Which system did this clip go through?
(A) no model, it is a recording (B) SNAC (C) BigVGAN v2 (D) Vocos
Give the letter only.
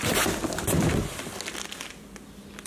A